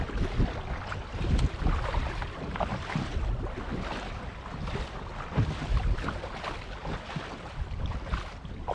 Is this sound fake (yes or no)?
no